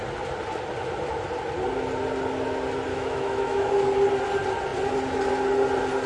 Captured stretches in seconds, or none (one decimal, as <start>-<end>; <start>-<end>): 0.0-2.9; 3.7-6.1